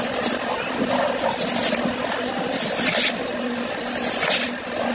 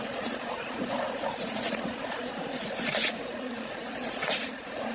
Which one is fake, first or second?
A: second